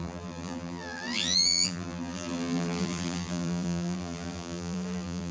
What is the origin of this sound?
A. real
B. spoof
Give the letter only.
B